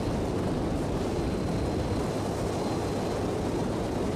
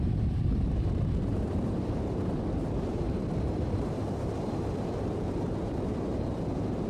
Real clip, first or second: first